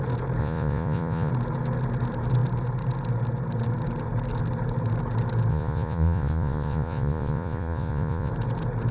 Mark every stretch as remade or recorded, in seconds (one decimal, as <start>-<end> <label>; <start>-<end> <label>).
0.0-0.4 recorded; 0.4-1.3 remade; 1.3-5.5 recorded; 5.5-8.3 remade; 8.3-8.9 recorded